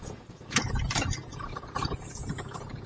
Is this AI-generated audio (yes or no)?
no